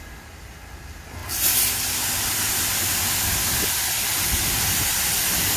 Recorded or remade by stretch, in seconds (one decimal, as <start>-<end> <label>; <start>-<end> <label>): 0.0-5.6 recorded

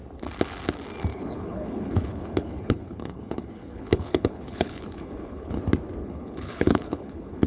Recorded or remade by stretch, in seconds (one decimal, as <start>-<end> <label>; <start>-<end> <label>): 0.0-1.1 recorded; 1.1-5.6 remade; 5.6-6.0 recorded; 6.0-7.5 remade